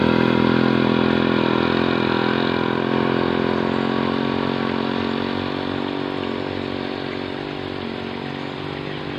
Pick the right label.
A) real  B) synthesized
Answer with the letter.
A